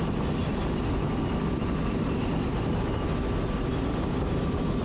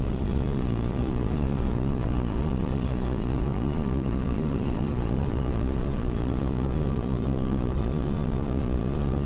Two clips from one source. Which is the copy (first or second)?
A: second